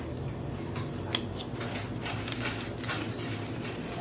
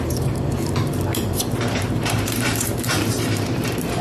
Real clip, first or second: first